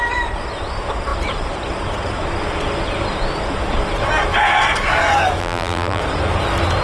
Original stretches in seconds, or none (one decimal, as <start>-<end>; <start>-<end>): 0.0-5.4; 6.0-6.8